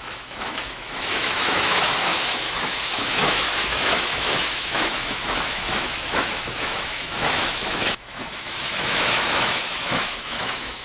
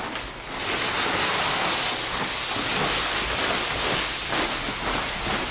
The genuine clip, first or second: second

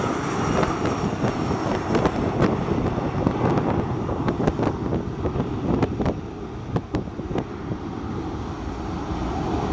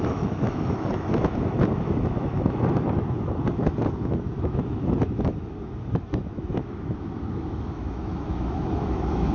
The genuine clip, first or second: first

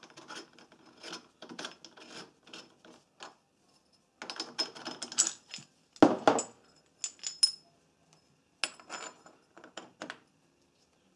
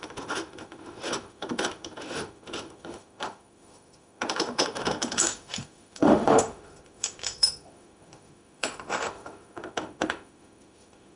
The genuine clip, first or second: first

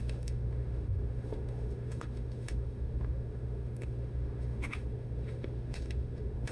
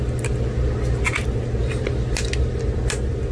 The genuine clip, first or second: second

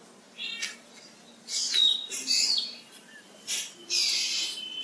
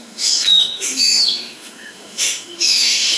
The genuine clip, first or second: first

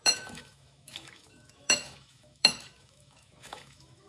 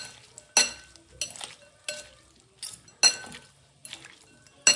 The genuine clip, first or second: second